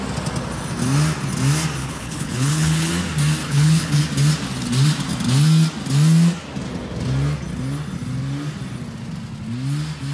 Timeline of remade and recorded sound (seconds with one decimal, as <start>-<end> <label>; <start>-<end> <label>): 0.0-1.8 recorded; 1.8-2.9 remade; 2.9-3.4 recorded; 3.4-4.0 remade; 4.0-10.1 recorded